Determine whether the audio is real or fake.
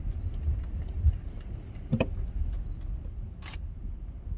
real